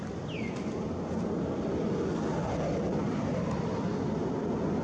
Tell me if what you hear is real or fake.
real